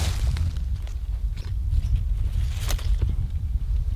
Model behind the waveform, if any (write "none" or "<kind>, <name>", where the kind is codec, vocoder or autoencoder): none